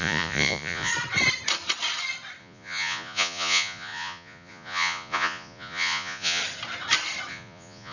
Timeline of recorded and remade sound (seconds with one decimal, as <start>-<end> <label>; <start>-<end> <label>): 0.0-0.9 remade; 0.9-2.4 recorded; 2.4-6.4 remade; 6.4-7.3 recorded; 7.3-7.9 remade